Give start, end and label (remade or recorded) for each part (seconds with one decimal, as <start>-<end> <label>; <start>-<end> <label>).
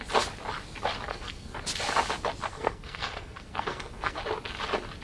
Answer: 0.0-1.1 recorded; 1.1-1.6 remade; 1.6-2.5 recorded; 2.5-4.2 remade; 4.2-5.0 recorded